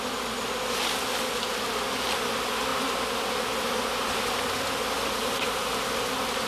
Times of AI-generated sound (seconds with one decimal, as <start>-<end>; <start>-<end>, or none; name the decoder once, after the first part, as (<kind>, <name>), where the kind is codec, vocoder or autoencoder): none